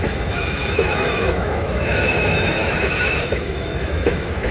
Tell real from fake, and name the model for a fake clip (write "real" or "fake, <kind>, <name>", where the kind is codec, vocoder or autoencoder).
fake, autoencoder, DAC-VAE